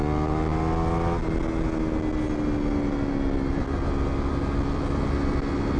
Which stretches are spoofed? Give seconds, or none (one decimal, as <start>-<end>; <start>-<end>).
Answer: none